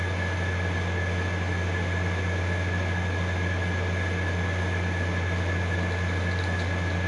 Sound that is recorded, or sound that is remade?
recorded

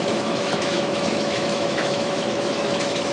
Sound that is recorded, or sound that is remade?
remade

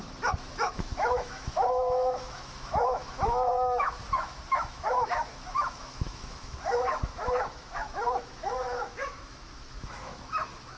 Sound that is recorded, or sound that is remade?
remade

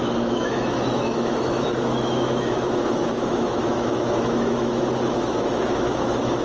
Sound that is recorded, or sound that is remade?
remade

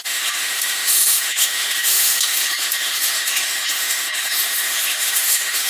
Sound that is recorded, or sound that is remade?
remade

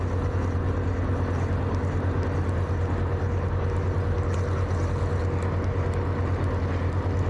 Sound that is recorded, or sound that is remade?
recorded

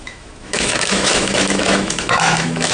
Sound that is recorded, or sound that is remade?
remade